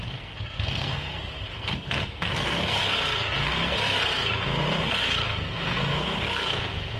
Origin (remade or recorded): remade